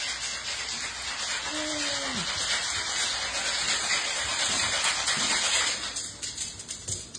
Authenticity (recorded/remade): recorded